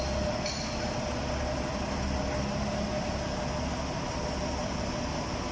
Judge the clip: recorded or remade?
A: recorded